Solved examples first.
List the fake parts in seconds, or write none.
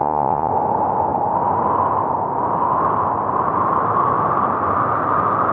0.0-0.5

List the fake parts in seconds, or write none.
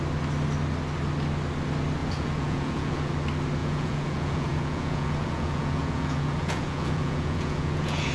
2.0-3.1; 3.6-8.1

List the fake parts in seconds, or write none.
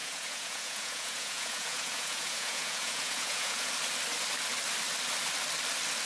0.0-3.7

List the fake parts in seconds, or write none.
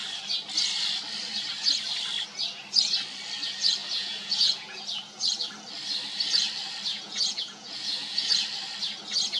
3.8-4.8; 6.9-8.3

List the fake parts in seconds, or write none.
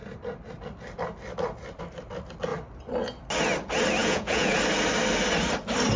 4.0-4.6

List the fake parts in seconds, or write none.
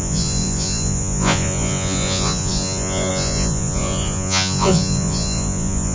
0.0-5.9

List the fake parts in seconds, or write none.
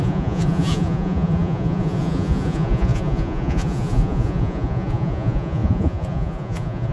0.0-6.9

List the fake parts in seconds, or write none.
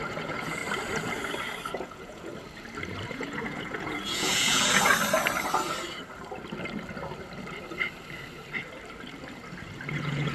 0.0-0.6; 1.7-2.3; 3.1-4.9; 9.9-10.3